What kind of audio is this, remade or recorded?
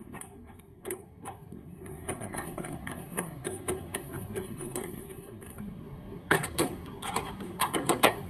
remade